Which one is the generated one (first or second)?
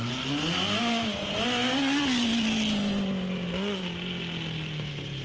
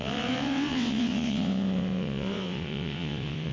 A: second